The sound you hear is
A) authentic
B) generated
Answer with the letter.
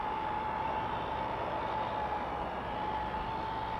A